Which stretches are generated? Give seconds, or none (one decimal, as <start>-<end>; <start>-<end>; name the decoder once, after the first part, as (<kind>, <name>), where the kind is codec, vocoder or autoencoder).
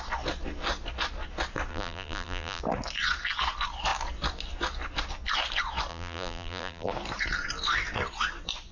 1.7-2.6 (vocoder, BigVGAN v2); 5.9-6.9